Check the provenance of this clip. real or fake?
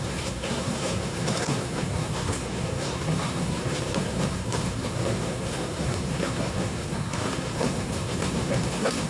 fake